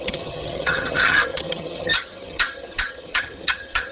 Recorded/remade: remade